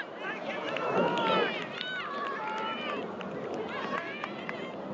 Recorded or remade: recorded